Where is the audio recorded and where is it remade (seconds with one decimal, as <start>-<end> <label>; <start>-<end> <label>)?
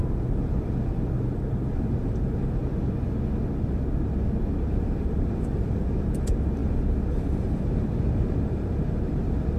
0.0-2.6 remade; 2.6-4.8 recorded; 4.8-9.6 remade